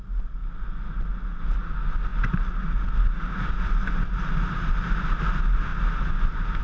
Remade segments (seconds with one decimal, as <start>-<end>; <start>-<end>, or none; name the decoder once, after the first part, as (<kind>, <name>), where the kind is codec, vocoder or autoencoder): none